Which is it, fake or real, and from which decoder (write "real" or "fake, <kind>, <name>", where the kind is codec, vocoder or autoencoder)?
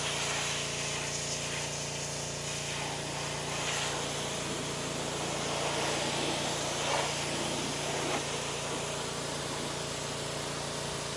real